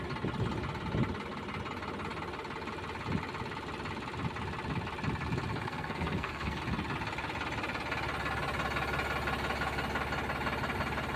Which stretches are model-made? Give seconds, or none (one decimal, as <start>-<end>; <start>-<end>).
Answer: 5.5-6.6